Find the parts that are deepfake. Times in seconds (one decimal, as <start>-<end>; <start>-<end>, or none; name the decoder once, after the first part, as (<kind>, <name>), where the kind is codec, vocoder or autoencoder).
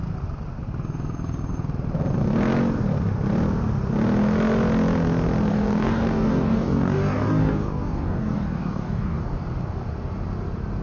5.5-9.2 (codec, DAC)